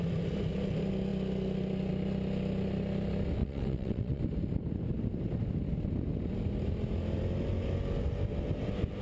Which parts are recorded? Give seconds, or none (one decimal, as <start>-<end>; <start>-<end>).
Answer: 0.0-3.4; 4.2-9.0